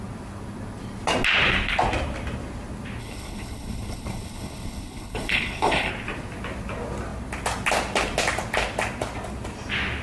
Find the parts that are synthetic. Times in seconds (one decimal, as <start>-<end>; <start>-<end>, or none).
3.0-5.9